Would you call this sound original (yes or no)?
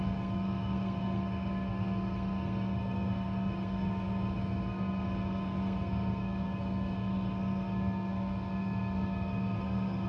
no